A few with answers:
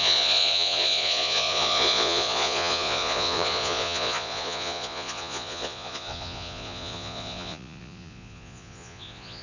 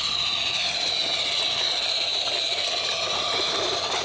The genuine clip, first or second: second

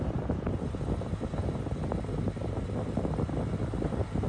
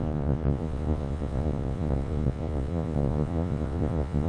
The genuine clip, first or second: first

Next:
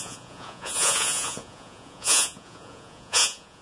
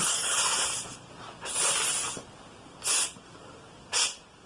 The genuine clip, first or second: second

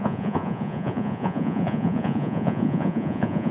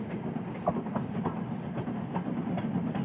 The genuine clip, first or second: second